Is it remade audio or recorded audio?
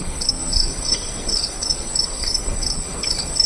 remade